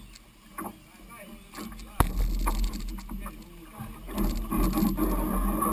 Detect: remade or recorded recorded